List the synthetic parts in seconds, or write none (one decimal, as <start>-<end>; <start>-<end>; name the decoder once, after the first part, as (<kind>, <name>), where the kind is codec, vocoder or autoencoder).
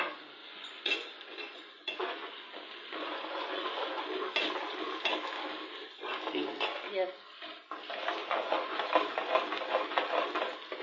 0.4-4.0 (vocoder, Vocos); 8.2-8.8